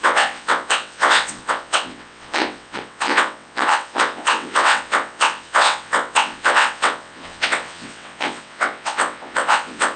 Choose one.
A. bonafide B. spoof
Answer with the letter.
B